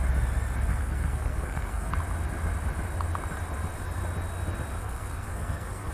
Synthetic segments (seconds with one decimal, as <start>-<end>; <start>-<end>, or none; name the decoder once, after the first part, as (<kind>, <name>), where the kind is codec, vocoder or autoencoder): 0.7-1.9 (codec, SNAC); 4.8-5.9